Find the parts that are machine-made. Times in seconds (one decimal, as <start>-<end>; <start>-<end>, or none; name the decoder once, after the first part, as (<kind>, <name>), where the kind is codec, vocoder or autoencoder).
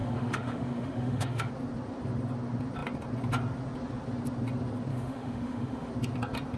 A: 0.0-1.5 (autoencoder, DAC-VAE); 4.9-5.9